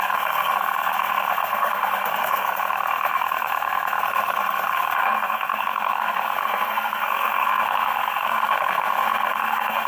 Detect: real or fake fake